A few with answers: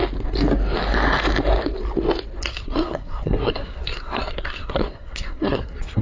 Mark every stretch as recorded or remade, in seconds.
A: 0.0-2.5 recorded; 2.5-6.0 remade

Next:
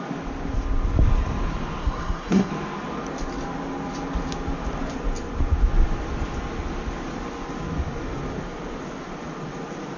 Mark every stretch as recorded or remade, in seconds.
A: 0.0-1.8 recorded; 1.8-2.5 remade; 2.5-10.0 recorded

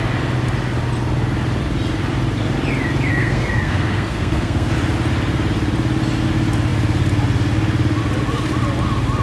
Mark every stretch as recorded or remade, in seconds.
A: 0.0-3.1 recorded; 3.1-4.7 remade; 4.7-9.2 recorded

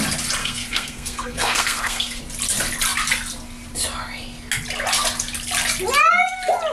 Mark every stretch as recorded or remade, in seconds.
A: 0.0-0.4 recorded; 0.4-2.2 remade; 2.2-6.7 recorded